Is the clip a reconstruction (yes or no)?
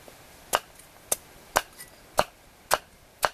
no